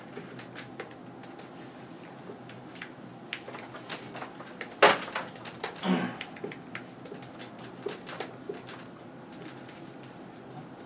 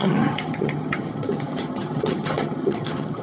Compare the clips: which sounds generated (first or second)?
second